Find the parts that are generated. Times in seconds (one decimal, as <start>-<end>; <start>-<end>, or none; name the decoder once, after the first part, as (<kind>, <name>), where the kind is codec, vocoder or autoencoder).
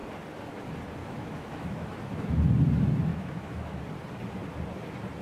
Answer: 1.0-2.3 (autoencoder, DAC-VAE); 3.1-3.8